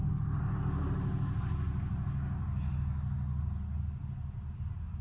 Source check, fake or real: real